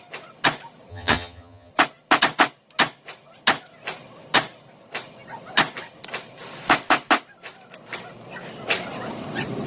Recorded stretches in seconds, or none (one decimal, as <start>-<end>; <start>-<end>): 0.0-0.9; 1.7-9.7